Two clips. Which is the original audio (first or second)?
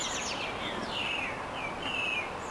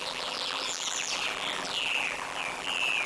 first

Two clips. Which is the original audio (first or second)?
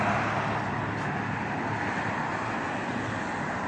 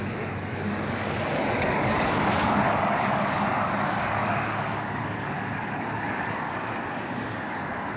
first